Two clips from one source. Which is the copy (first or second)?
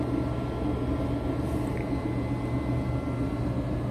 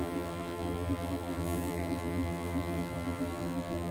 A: second